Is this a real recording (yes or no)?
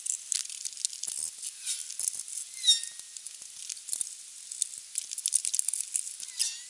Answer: yes